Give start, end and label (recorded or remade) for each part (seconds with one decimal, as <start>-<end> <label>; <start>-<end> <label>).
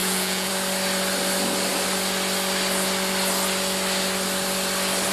0.0-0.5 remade; 0.5-5.1 recorded